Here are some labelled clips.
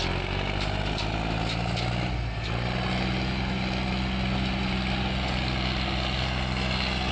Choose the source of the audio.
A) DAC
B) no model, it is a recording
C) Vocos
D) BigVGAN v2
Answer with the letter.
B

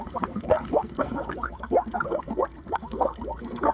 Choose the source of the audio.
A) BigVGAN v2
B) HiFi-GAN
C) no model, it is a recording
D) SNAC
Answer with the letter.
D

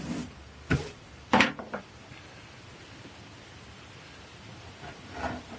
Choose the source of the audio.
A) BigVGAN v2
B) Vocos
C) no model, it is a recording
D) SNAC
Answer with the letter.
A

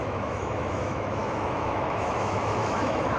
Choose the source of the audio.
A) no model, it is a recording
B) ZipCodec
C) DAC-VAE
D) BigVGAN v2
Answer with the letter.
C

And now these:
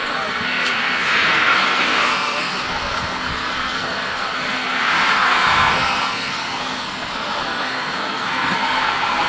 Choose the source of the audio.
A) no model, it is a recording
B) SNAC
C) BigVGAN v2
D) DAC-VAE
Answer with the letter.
B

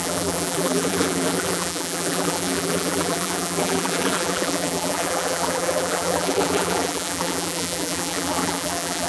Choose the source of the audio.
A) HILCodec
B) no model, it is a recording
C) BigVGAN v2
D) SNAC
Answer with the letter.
C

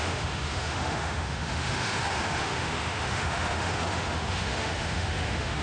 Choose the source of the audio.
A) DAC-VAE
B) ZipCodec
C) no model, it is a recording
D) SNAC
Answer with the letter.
A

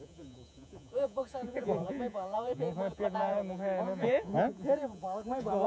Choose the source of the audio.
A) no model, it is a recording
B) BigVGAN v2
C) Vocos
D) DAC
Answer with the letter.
C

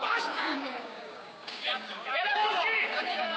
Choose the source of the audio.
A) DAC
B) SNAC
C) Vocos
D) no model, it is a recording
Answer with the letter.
A